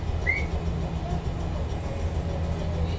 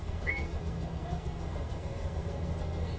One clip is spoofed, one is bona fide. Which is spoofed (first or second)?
second